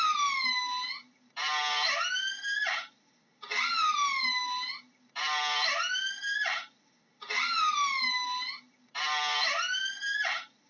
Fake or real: real